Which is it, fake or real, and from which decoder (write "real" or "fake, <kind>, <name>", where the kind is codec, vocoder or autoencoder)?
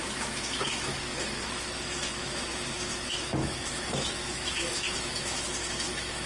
fake, autoencoder, DAC-VAE